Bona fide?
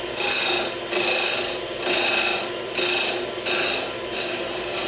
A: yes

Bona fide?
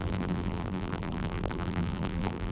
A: no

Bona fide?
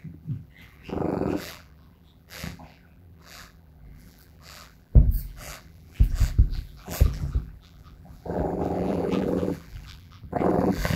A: no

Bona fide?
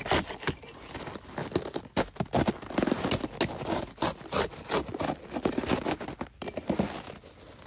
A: yes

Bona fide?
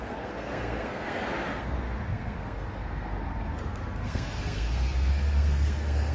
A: no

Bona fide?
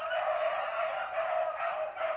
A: yes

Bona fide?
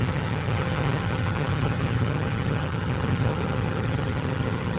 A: no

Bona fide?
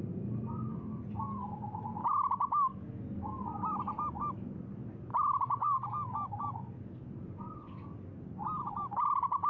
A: yes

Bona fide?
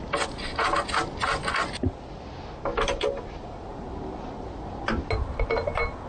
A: yes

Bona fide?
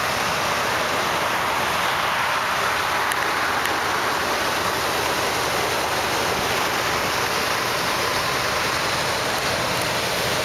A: yes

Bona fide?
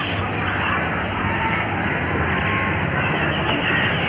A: yes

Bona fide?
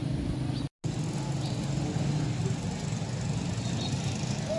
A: yes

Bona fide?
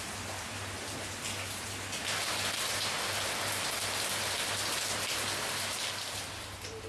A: yes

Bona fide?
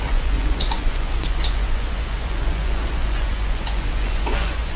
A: no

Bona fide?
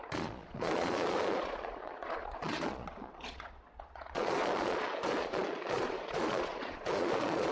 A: no